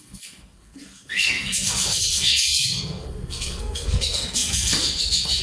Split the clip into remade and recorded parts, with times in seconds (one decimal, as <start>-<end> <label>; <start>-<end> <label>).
0.0-5.4 remade